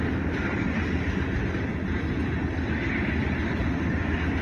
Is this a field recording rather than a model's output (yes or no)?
yes